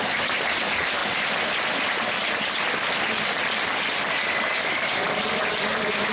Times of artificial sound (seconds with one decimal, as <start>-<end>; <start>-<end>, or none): 0.0-1.0; 1.7-2.2; 4.7-6.1